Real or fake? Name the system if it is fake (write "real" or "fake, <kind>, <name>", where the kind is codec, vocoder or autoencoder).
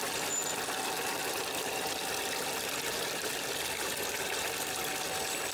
fake, vocoder, BigVGAN v2